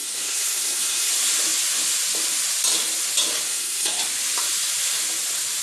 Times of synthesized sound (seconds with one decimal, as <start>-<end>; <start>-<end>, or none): 0.0-1.1; 3.5-4.0